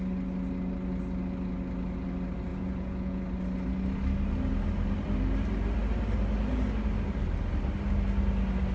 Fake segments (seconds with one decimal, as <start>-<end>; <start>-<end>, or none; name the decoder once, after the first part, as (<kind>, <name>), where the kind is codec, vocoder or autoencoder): 2.5-3.2 (vocoder, Vocos)